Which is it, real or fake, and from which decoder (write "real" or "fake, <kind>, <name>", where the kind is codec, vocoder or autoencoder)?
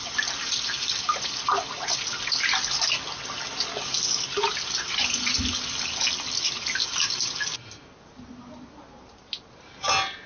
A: real